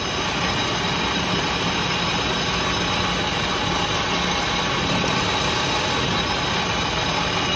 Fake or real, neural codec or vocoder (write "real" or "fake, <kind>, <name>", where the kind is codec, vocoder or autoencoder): real